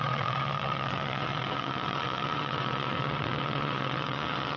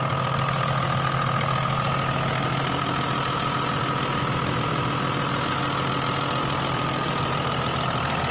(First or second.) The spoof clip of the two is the first